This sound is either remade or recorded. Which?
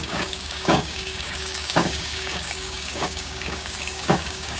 remade